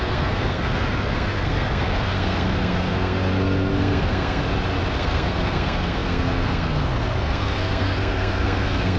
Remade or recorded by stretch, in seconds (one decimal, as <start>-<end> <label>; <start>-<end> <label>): 0.0-4.4 remade; 4.4-4.9 recorded; 4.9-9.0 remade